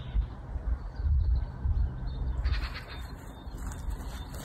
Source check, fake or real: real